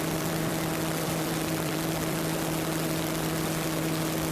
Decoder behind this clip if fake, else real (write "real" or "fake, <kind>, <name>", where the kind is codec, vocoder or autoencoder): fake, vocoder, BigVGAN v2